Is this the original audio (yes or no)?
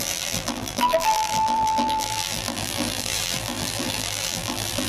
no